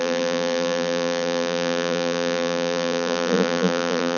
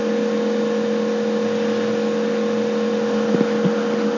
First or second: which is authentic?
second